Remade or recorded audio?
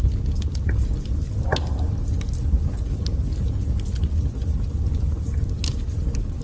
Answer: recorded